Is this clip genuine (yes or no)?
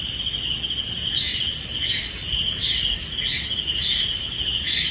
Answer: yes